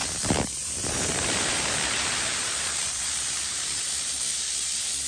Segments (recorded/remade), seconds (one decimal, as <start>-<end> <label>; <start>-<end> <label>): 0.0-5.1 remade